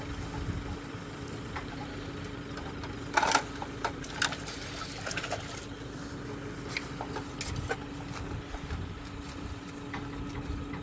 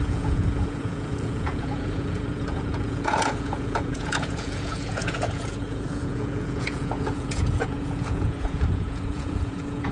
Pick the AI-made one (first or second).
second